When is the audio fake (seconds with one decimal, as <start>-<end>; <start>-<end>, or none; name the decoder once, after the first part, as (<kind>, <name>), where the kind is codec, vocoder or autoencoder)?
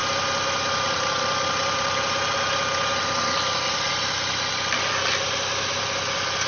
3.9-6.5 (vocoder, BigVGAN v2)